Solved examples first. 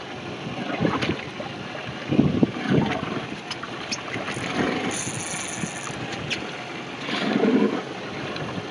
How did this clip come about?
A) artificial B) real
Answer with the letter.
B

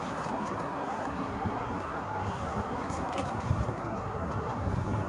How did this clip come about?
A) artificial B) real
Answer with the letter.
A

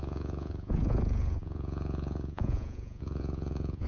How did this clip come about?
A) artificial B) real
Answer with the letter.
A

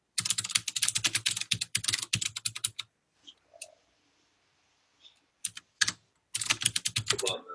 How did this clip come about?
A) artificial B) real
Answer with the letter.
A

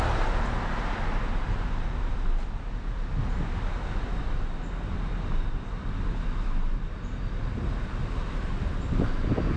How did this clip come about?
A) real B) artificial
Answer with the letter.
A